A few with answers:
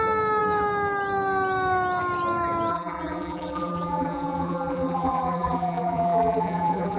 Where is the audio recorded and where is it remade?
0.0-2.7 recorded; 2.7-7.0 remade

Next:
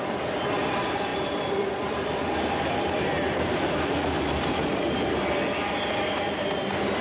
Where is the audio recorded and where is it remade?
0.0-1.1 recorded; 1.1-5.1 remade; 5.1-7.0 recorded

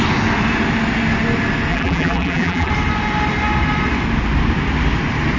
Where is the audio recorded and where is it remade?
0.0-1.7 recorded; 1.7-2.7 remade; 2.7-5.4 recorded

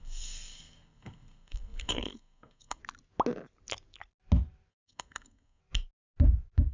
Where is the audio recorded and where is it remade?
0.0-2.8 remade; 2.8-4.7 recorded; 4.7-5.6 remade; 5.6-6.7 recorded

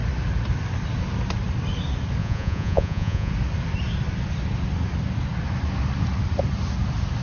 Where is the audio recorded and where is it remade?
0.0-2.2 recorded; 2.2-3.3 remade; 3.3-7.2 recorded